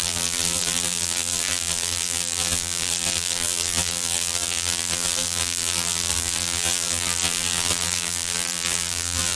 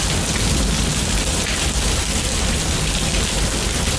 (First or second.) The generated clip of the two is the first